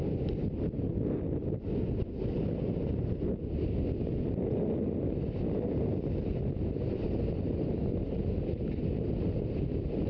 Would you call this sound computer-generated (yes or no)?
no